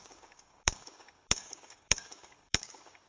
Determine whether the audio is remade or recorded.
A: remade